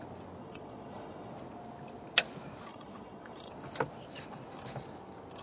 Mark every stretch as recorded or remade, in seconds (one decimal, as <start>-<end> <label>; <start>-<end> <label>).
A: 0.0-0.4 recorded; 0.4-1.3 remade; 1.3-2.7 recorded; 2.7-3.5 remade; 3.5-5.4 recorded